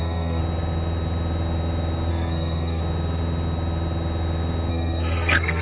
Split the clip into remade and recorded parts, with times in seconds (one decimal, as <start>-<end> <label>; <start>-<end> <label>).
0.0-0.4 remade; 0.4-2.1 recorded; 2.1-2.8 remade; 2.8-4.7 recorded; 4.7-5.6 remade